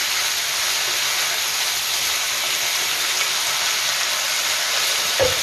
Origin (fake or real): real